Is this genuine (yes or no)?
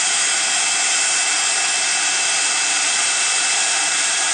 yes